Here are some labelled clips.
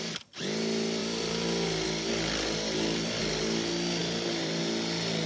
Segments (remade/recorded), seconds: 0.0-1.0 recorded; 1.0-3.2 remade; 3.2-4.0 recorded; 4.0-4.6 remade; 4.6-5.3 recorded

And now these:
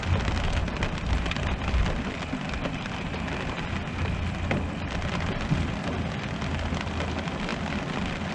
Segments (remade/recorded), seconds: 0.0-8.3 recorded